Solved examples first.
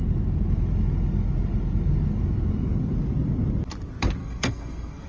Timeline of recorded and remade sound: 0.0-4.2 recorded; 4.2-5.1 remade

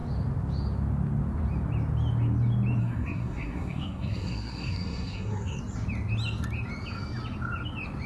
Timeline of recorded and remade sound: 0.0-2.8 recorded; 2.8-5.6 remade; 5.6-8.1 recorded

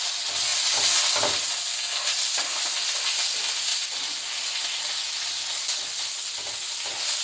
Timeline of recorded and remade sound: 0.0-7.2 recorded

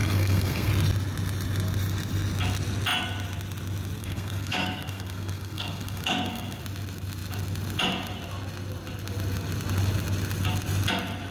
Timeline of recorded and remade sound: 0.0-0.7 remade; 0.7-4.0 recorded; 4.0-6.6 remade; 6.6-11.3 recorded

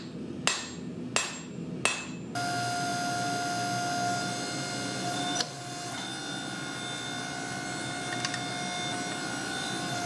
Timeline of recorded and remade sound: 0.0-10.1 recorded

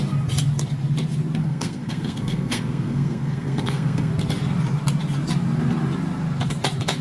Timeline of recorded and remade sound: 0.0-1.4 recorded; 1.4-4.1 remade; 4.1-7.0 recorded

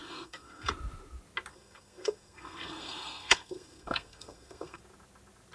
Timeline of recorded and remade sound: 0.0-0.7 remade; 0.7-1.5 recorded; 1.5-4.8 remade; 4.8-5.5 recorded